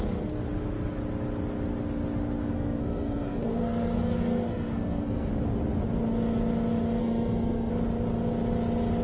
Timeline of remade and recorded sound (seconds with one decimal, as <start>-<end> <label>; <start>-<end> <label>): 0.0-2.4 recorded; 2.4-5.3 remade; 5.3-7.0 recorded; 7.0-7.7 remade; 7.7-9.0 recorded